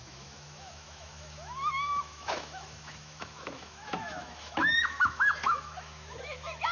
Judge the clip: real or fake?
fake